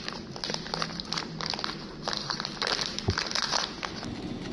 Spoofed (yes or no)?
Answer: no